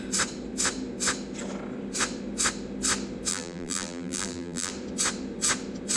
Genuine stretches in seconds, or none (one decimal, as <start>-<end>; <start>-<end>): 0.0-3.3; 4.7-6.0